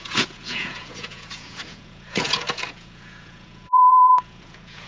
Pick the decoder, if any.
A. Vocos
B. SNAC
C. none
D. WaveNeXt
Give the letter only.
A